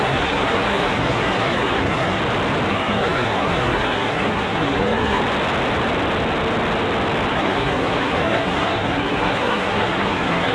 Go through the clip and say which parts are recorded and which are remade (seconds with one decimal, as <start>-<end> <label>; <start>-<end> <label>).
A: 0.0-2.2 remade; 2.2-2.7 recorded; 2.7-5.2 remade; 5.2-7.3 recorded; 7.3-10.5 remade